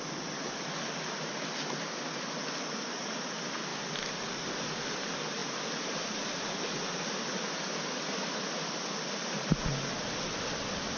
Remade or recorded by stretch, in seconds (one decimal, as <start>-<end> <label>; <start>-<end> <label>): 0.0-11.0 recorded